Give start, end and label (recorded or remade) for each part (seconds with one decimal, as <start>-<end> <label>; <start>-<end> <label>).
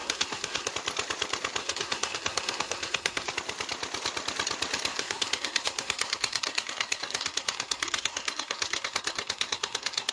0.0-0.7 remade; 0.7-1.6 recorded; 1.6-3.3 remade; 3.3-4.9 recorded; 4.9-10.1 remade